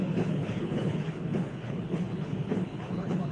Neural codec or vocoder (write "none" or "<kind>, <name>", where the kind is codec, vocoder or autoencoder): codec, HILCodec